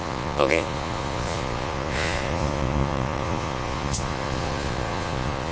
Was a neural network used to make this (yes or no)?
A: yes